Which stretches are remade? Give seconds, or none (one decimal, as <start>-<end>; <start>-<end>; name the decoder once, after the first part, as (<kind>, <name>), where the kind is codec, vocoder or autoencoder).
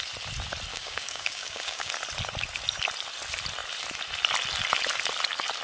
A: 0.7-1.9 (codec, DAC)